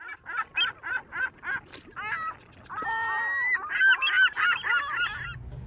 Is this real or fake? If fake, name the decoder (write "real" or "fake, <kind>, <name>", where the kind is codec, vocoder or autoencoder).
real